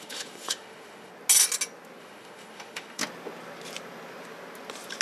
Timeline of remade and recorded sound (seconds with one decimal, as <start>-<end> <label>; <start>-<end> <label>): 0.0-1.1 remade; 1.1-2.0 recorded; 2.0-3.0 remade; 3.0-5.0 recorded